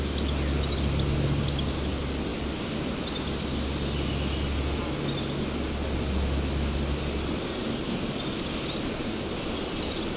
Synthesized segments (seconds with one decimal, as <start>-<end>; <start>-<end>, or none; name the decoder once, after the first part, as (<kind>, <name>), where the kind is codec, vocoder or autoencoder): none